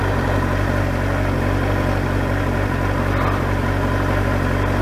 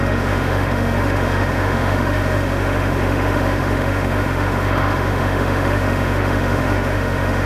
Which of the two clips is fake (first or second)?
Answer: second